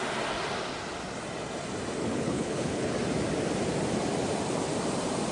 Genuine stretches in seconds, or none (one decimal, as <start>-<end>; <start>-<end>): 0.0-2.0; 2.9-5.3